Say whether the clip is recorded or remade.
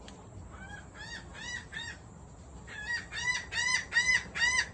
recorded